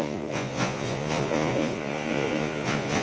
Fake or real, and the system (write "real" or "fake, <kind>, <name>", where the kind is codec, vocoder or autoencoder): fake, vocoder, Vocos